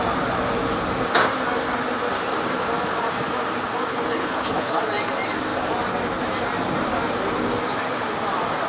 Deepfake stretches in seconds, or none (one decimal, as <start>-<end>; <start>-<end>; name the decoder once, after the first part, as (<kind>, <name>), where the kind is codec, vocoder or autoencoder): 3.9-4.8 (codec, HILCodec)